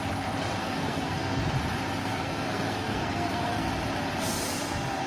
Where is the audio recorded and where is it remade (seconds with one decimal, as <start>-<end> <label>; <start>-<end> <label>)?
0.0-0.6 recorded; 0.6-1.4 remade; 1.4-2.0 recorded; 2.0-3.7 remade; 3.7-5.1 recorded